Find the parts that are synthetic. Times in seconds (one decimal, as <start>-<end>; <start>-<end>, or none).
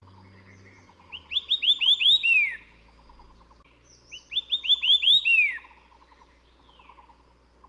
none